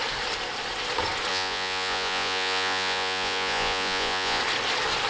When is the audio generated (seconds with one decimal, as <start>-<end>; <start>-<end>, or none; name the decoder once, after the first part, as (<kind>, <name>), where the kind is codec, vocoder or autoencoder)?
1.3-4.4 (vocoder, Vocos)